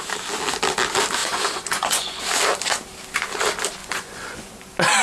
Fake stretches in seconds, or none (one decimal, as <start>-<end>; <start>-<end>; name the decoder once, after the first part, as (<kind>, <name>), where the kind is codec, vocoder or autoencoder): 1.2-2.2 (vocoder, Vocos); 3.8-4.5